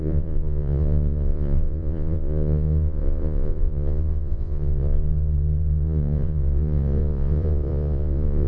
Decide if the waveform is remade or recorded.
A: remade